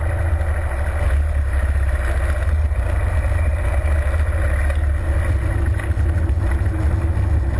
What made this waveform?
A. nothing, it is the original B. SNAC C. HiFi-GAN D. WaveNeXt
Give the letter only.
A